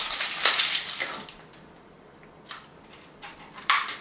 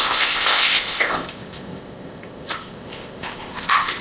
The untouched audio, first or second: first